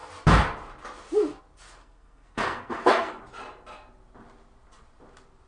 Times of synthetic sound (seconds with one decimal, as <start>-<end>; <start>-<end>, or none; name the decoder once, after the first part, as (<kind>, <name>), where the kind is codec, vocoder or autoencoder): 1.8-3.2 (codec, SNAC)